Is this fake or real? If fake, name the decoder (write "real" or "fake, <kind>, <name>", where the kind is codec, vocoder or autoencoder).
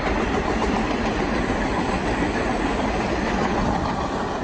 real